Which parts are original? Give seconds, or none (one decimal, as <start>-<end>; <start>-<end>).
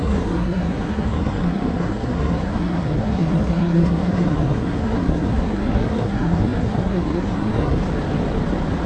7.8-8.9